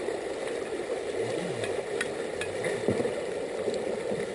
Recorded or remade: recorded